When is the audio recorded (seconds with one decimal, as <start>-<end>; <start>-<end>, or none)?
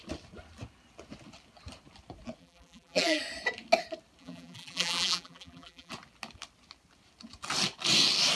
0.0-2.4; 3.2-4.2; 5.9-8.4